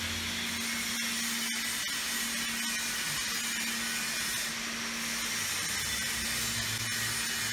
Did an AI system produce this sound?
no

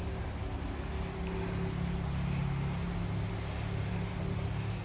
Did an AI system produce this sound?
no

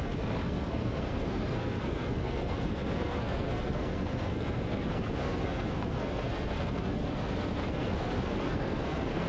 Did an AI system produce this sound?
yes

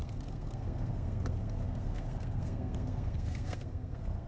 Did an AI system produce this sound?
yes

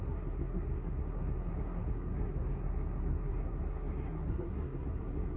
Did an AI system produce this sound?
yes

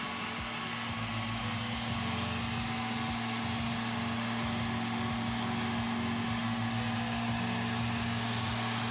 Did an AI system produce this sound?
no